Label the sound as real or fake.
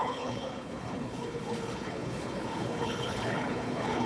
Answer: fake